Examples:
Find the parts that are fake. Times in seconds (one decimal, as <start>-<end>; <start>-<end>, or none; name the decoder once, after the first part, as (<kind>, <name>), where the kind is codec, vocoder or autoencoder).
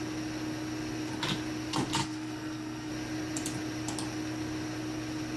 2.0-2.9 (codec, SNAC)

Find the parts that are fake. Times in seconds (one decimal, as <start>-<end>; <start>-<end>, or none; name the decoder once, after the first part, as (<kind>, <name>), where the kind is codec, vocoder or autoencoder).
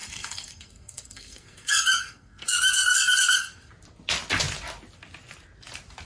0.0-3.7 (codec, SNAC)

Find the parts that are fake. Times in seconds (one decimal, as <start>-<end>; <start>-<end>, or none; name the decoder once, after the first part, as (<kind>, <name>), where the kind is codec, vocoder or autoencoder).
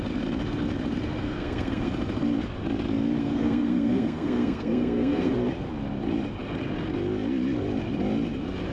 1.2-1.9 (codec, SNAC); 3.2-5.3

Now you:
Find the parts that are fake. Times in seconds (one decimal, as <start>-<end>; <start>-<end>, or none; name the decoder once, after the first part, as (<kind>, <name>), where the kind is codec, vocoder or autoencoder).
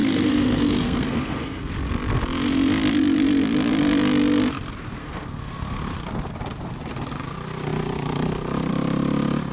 0.0-1.6 (codec, SNAC); 5.0-5.8